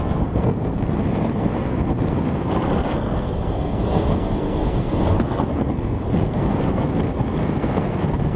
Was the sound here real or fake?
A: fake